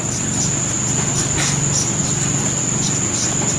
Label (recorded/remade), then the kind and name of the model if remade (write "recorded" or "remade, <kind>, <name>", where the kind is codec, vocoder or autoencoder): recorded